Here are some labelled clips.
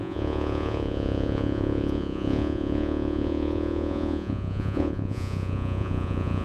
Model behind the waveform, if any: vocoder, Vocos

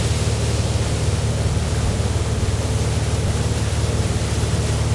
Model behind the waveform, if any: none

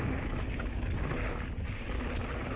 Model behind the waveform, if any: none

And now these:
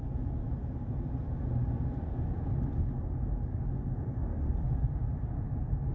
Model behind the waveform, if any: none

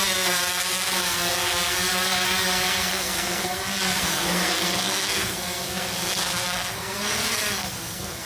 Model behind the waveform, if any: codec, SNAC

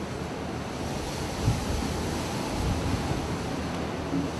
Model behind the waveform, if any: none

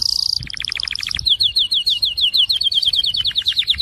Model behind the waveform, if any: none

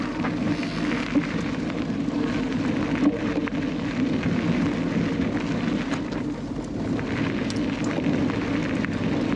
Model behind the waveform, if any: none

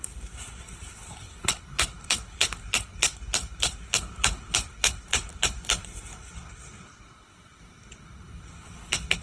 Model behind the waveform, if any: codec, HILCodec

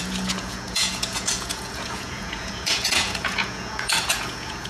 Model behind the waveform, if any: vocoder, Vocos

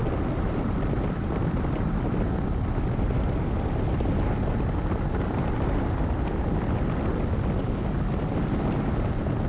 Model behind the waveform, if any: none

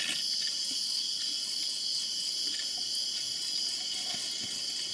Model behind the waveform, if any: none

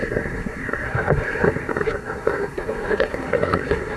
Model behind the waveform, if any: codec, SNAC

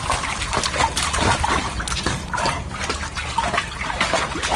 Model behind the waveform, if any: none